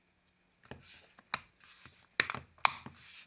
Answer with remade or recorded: recorded